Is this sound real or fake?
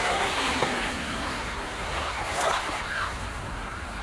fake